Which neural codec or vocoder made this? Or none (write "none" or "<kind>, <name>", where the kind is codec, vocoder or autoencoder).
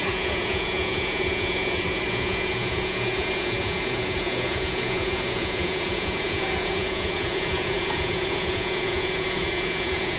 vocoder, Vocos